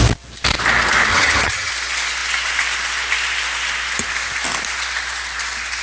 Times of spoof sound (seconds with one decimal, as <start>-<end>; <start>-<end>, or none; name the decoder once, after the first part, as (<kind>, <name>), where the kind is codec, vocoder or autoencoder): 1.1-1.7 (vocoder, HiFi-GAN)